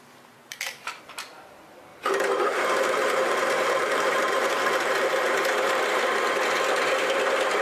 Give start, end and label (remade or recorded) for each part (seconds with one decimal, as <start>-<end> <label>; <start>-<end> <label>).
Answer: 0.0-0.4 recorded; 0.4-1.0 remade; 1.0-1.9 recorded; 1.9-6.0 remade; 6.0-7.6 recorded